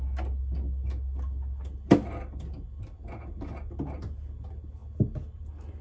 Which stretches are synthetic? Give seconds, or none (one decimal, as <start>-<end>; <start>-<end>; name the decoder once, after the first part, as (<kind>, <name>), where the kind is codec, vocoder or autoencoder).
none